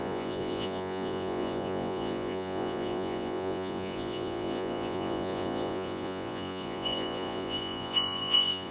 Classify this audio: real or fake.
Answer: fake